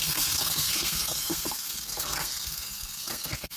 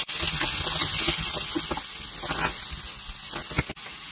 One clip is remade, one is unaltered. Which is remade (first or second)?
first